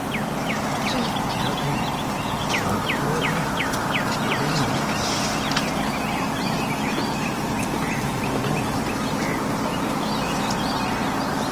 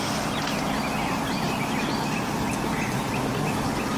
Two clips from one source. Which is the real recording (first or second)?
first